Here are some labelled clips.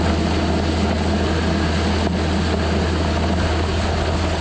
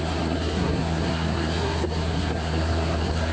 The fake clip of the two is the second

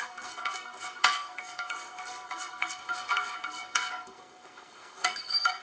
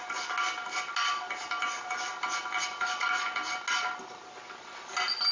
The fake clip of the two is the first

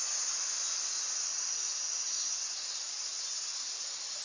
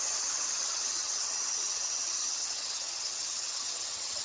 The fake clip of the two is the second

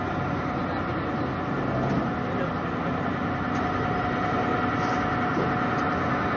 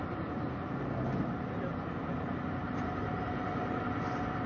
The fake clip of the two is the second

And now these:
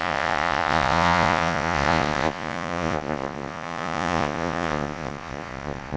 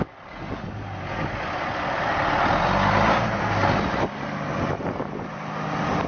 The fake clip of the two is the first